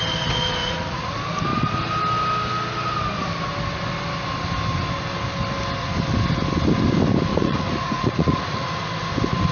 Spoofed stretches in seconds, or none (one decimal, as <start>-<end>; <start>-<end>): 0.6-1.1; 7.3-8.8